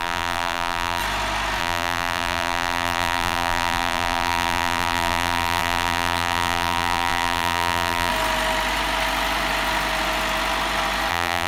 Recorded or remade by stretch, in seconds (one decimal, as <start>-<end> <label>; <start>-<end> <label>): 0.0-1.0 remade; 1.0-1.6 recorded; 1.6-8.1 remade; 8.1-11.1 recorded; 11.1-11.5 remade